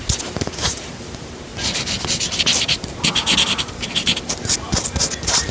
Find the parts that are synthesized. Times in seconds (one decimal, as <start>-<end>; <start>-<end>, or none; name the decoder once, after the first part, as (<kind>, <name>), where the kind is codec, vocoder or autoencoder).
none